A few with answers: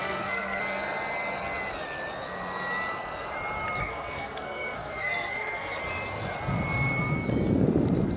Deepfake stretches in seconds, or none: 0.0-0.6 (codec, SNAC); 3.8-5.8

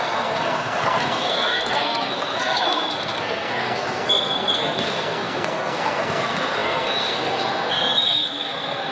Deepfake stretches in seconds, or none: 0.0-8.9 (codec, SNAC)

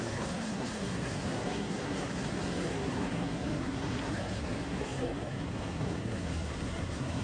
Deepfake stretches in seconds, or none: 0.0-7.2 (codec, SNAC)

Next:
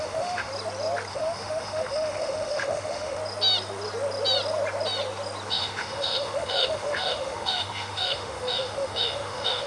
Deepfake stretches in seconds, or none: 0.0-0.5 (autoencoder, DAC-VAE); 1.1-3.2; 5.5-9.7

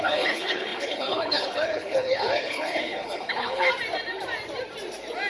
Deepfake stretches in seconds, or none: 0.0-3.7 (codec, HILCodec)

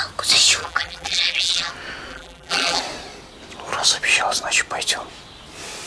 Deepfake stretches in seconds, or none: 0.6-1.7 (vocoder, BigVGAN v2); 2.1-2.8

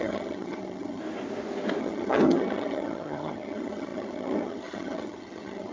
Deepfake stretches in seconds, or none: 0.0-1.0 (vocoder, HiFi-GAN); 1.8-5.7